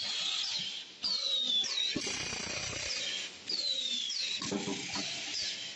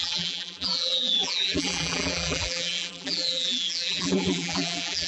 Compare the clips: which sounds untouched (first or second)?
first